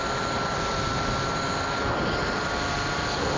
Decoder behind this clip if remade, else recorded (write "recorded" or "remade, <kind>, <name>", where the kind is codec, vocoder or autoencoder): recorded